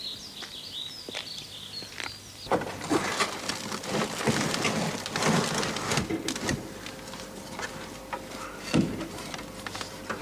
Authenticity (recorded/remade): recorded